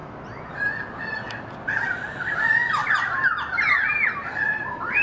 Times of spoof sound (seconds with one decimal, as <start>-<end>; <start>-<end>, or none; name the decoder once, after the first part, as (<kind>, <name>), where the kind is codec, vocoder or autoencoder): none